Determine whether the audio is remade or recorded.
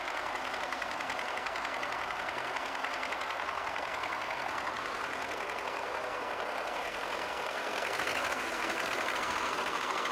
remade